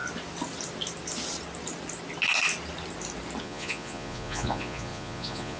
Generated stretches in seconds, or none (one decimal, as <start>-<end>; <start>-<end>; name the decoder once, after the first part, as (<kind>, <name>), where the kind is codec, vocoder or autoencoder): 3.4-5.6 (vocoder, Vocos)